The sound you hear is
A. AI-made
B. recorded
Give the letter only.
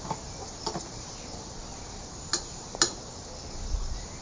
B